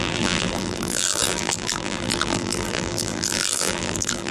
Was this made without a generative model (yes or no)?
no